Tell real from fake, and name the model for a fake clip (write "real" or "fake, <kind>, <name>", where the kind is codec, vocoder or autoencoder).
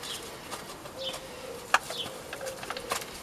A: real